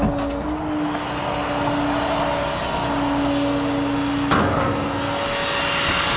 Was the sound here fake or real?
real